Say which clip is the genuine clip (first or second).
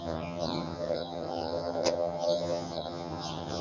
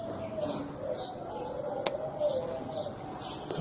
second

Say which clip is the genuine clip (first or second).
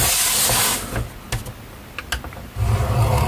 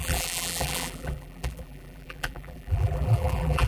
first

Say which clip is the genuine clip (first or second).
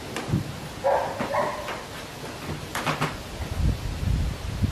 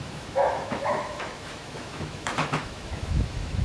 first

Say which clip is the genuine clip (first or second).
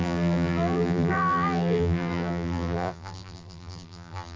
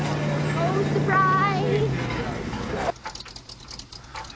second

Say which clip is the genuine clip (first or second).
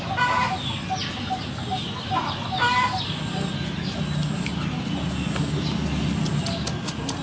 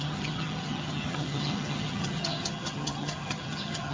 first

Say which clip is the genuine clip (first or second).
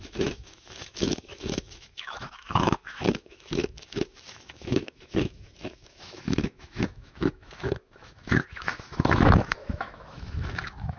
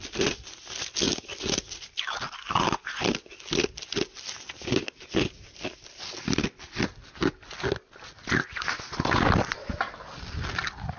second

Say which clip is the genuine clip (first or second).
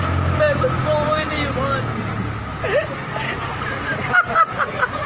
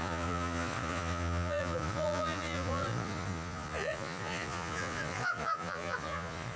first